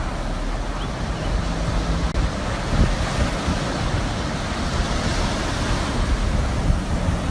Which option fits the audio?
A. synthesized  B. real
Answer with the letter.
B